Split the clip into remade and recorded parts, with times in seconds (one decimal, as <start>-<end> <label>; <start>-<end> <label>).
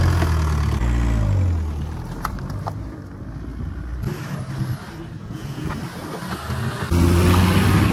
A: 0.0-5.2 recorded; 5.2-5.7 remade; 5.7-7.9 recorded